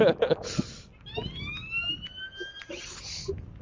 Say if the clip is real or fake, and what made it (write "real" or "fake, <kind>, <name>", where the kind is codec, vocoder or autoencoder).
real